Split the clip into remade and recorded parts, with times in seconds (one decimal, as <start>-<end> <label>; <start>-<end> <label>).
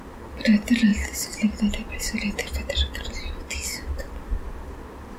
0.0-5.2 recorded